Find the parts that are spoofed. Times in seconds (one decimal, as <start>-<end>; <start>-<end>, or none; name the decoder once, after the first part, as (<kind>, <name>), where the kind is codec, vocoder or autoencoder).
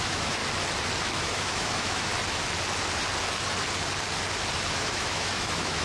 0.0-0.4 (autoencoder, DAC-VAE); 1.0-2.1; 4.8-5.8